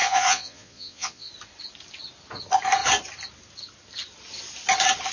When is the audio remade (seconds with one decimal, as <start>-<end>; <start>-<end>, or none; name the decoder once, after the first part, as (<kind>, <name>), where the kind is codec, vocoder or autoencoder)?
0.0-1.3 (vocoder, Vocos)